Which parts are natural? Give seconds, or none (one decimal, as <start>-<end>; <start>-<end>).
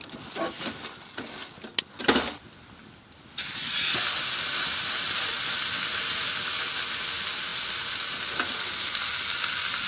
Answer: 0.0-9.9